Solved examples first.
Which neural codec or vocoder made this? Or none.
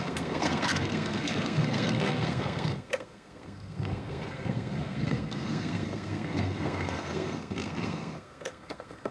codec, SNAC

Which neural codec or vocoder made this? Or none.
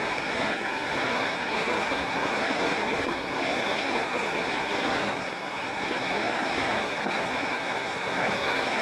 codec, SNAC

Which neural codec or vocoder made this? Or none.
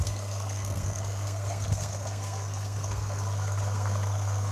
codec, SNAC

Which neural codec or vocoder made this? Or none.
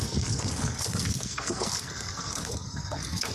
codec, SNAC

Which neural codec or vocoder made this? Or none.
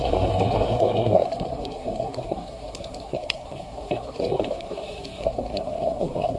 codec, SNAC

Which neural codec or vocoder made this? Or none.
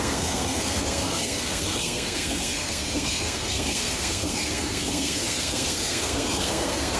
codec, SNAC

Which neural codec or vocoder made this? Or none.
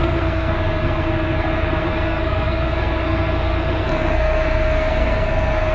codec, SNAC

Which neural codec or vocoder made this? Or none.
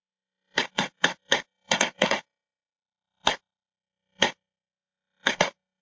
codec, SNAC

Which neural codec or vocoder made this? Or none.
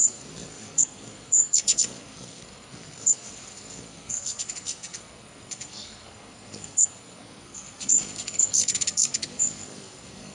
codec, SNAC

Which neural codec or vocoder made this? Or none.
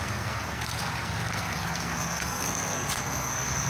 codec, SNAC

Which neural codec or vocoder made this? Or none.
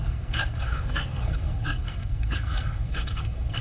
codec, SNAC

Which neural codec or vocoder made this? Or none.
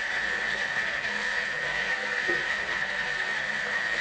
codec, SNAC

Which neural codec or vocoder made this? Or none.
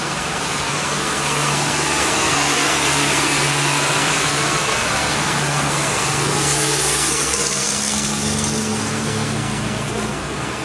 codec, SNAC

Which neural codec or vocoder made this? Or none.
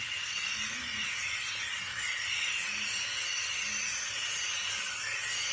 none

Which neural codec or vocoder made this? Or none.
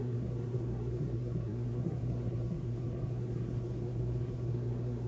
codec, SNAC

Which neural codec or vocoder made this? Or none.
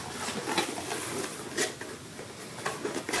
none